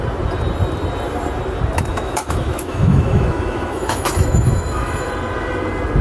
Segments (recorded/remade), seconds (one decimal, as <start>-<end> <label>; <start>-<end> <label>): 0.0-1.9 recorded; 1.9-5.1 remade; 5.1-6.0 recorded